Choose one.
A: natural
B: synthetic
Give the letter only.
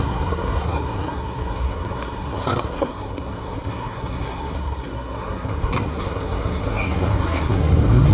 B